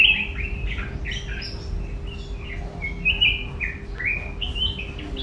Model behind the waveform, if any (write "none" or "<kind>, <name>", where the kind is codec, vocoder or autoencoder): none